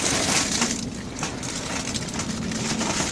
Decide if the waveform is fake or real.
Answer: real